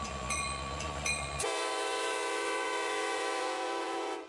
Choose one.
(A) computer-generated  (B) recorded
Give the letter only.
A